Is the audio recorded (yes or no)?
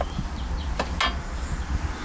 yes